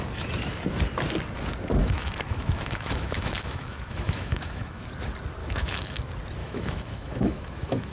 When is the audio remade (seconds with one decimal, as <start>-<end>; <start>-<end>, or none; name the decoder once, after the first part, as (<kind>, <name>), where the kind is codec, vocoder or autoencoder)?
1.8-4.9 (autoencoder, DAC-VAE); 5.4-6.0; 6.4-7.9